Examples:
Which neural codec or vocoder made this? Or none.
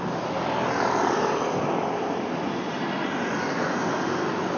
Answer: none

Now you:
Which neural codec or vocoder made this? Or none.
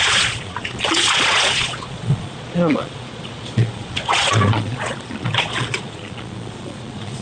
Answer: vocoder, Vocos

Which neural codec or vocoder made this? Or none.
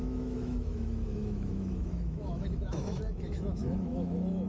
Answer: autoencoder, DAC-VAE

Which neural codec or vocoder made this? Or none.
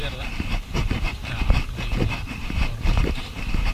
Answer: vocoder, BigVGAN v2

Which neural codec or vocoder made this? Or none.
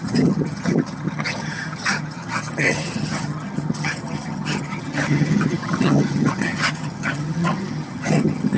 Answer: vocoder, HiFi-GAN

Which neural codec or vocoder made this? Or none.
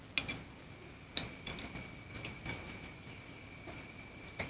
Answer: none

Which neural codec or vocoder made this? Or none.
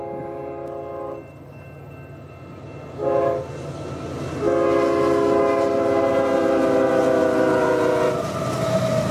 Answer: none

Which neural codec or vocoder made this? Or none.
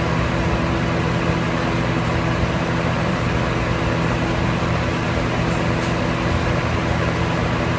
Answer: none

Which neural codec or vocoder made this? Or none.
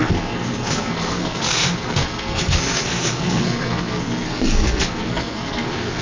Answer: codec, SNAC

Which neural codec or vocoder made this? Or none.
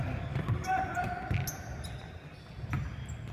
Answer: none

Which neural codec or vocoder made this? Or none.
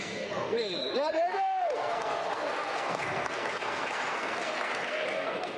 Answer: codec, SNAC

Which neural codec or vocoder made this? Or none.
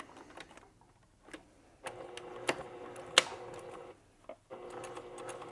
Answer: none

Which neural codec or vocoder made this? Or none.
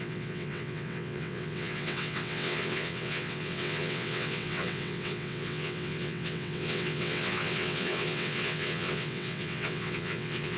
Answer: vocoder, WaveNeXt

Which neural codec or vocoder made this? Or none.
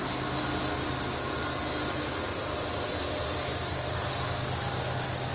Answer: none